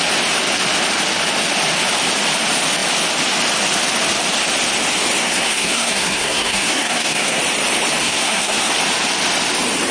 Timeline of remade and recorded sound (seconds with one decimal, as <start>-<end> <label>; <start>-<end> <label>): 0.0-5.2 recorded; 5.2-7.4 remade; 7.4-8.0 recorded; 8.0-8.7 remade; 8.7-9.9 recorded